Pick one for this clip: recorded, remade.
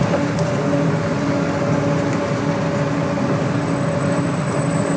recorded